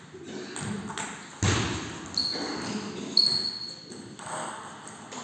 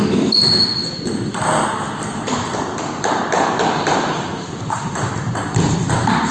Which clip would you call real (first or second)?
first